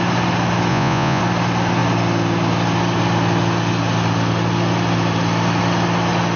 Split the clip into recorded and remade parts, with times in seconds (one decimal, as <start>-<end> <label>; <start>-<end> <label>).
0.0-0.7 recorded; 0.7-1.2 remade; 1.2-6.4 recorded